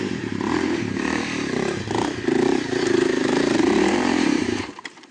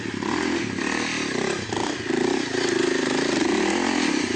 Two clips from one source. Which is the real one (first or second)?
second